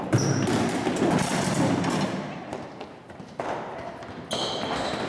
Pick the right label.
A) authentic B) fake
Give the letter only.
A